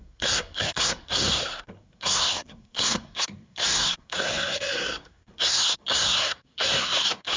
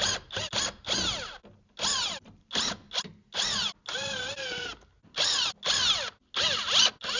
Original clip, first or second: second